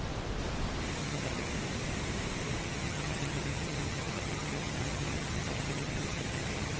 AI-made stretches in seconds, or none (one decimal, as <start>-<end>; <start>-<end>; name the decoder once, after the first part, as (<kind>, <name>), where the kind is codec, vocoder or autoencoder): 1.0-1.5 (vocoder, HiFi-GAN); 2.6-6.8